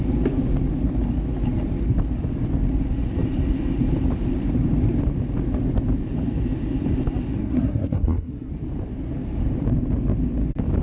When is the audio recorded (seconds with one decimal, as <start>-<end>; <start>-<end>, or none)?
0.0-7.4; 8.5-10.8